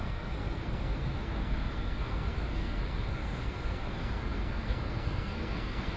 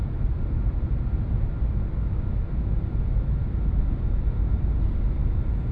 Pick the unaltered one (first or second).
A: second